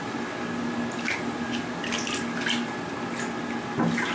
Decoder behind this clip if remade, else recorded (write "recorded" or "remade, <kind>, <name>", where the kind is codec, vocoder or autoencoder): recorded